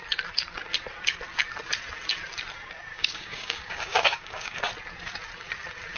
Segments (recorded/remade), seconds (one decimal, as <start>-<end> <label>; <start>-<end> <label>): 0.0-2.9 recorded; 2.9-4.6 remade; 4.6-6.0 recorded